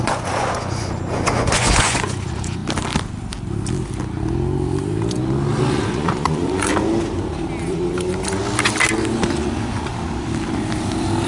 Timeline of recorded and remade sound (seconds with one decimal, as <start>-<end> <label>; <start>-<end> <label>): 0.0-2.6 remade; 2.6-5.7 recorded; 5.7-6.7 remade; 6.7-9.3 recorded; 9.3-9.9 remade; 9.9-11.3 recorded